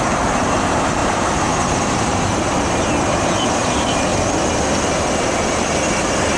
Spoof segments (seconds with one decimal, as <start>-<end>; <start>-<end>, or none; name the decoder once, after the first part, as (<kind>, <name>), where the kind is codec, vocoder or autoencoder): 0.0-2.3 (vocoder, BigVGAN v2); 3.1-4.1